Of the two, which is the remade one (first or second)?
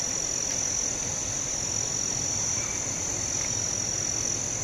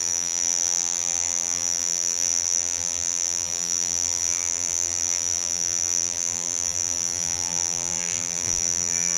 second